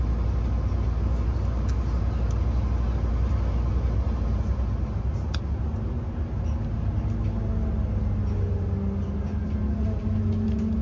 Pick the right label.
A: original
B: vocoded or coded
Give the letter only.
A